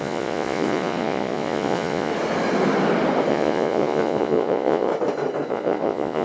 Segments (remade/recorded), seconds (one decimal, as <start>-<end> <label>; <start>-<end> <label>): 0.0-2.1 remade; 2.1-3.3 recorded; 3.3-4.9 remade; 4.9-5.5 recorded; 5.5-6.2 remade